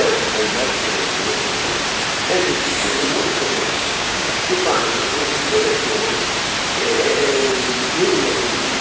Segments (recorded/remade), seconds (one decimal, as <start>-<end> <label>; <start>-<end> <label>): 0.0-2.7 recorded; 2.7-4.5 remade; 4.5-8.8 recorded